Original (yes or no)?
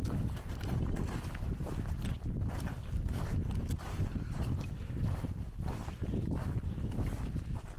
yes